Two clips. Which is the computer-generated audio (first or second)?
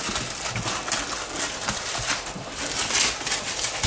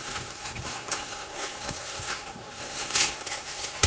second